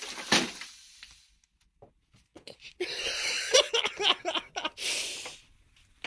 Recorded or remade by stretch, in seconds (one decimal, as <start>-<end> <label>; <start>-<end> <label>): 0.0-2.3 recorded; 2.3-3.7 remade; 3.7-6.1 recorded